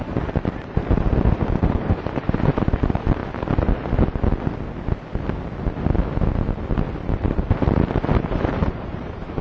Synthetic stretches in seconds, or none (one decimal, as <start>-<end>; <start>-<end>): 0.0-3.2; 7.1-9.4